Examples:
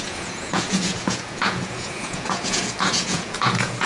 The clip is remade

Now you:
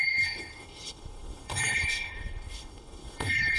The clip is remade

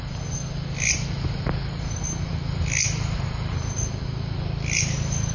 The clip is recorded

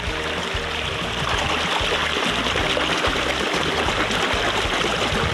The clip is recorded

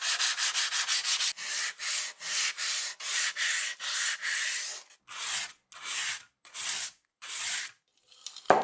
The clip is recorded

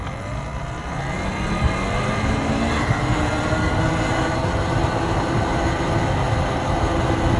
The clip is recorded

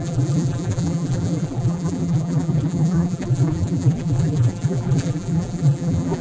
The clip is remade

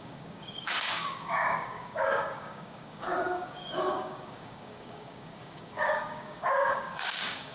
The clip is remade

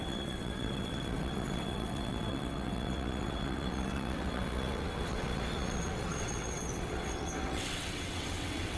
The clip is remade